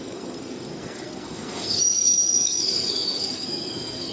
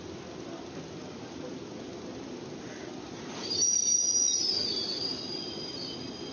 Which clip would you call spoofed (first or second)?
first